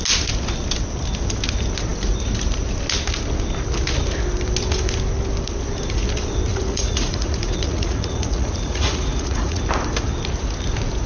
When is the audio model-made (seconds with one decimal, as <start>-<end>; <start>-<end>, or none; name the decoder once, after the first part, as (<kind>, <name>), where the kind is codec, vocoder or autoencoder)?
6.5-9.6 (vocoder, Vocos)